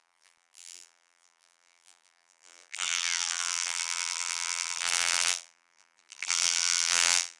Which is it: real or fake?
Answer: fake